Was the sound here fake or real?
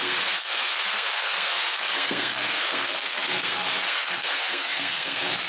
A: fake